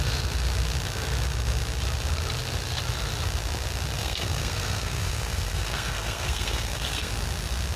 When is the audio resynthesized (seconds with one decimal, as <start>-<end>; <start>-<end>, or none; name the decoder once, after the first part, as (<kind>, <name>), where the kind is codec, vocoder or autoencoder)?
4.0-7.1 (codec, SNAC)